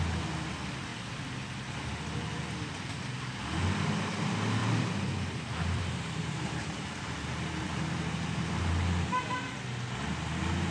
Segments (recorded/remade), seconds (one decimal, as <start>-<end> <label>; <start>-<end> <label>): 0.0-4.6 recorded; 4.6-8.7 remade; 8.7-10.7 recorded